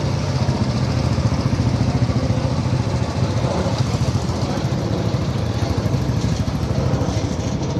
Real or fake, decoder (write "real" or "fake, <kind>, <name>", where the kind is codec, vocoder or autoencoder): real